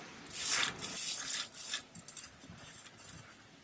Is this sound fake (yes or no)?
no